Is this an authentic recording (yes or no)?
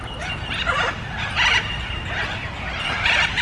yes